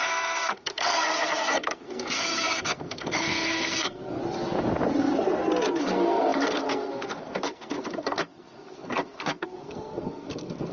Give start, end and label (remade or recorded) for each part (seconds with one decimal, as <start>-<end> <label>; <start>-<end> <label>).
0.0-4.2 remade; 4.2-5.8 recorded; 5.8-10.7 remade